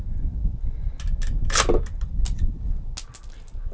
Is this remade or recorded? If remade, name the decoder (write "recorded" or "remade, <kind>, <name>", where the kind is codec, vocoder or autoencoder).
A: recorded